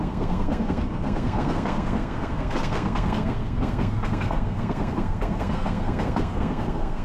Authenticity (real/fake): fake